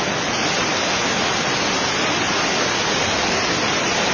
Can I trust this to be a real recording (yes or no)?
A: yes